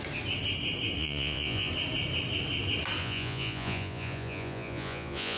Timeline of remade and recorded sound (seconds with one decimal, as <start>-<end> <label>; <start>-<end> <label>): 0.0-1.0 recorded; 1.0-1.7 remade; 1.7-3.0 recorded; 3.0-5.4 remade